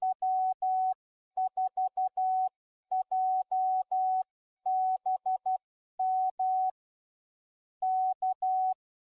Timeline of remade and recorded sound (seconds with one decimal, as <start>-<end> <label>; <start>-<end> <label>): 0.0-1.3 recorded; 1.3-5.9 remade; 5.9-9.2 recorded